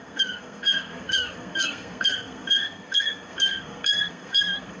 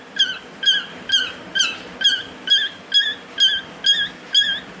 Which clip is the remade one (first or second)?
first